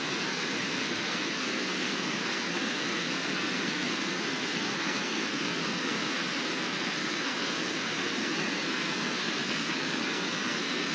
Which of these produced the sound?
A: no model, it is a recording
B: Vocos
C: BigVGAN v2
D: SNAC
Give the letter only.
D